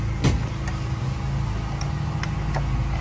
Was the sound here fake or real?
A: real